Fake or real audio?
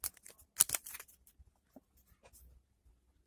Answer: real